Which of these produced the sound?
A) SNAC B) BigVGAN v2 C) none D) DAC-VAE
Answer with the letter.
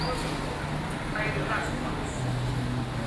C